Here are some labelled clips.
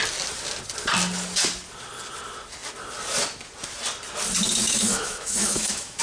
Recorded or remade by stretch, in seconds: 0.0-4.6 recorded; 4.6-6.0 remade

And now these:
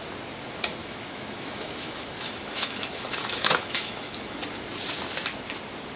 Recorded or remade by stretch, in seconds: 0.0-0.8 recorded; 0.8-4.4 remade; 4.4-6.0 recorded

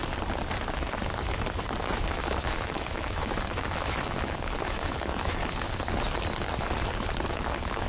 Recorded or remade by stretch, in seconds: 0.0-1.8 recorded; 1.8-5.4 remade; 5.4-7.3 recorded; 7.3-7.9 remade

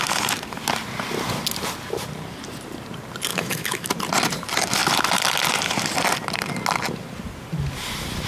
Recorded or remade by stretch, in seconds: 0.0-3.3 recorded; 3.3-3.9 remade; 3.9-8.3 recorded

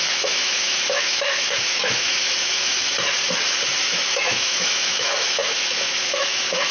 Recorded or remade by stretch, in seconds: 0.0-2.8 remade; 2.8-3.9 recorded; 3.9-6.7 remade